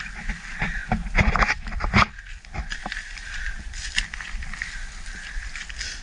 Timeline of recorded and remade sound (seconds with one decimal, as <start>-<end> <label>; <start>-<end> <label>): 0.0-6.0 recorded